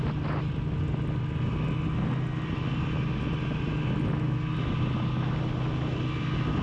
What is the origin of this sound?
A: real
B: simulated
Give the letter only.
A